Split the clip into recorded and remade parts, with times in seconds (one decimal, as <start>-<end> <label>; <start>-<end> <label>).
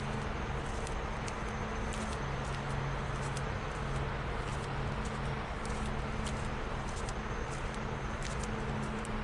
0.0-9.2 recorded